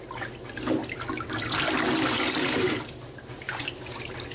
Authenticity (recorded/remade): recorded